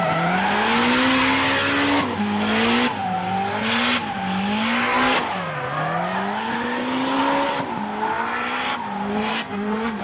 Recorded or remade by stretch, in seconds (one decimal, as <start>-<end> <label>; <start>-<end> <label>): 0.0-9.3 recorded; 9.3-10.0 remade